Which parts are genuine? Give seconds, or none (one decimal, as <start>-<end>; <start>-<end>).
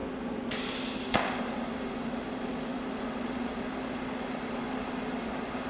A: 0.0-5.7